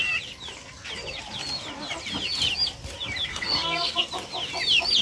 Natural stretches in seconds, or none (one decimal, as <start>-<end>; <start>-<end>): 0.0-3.3; 4.1-5.0